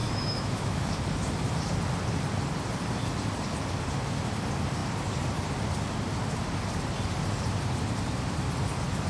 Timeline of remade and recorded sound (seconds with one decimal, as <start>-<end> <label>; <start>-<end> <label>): 0.0-0.9 remade; 0.9-9.1 recorded